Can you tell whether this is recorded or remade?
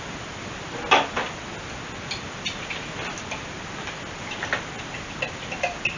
recorded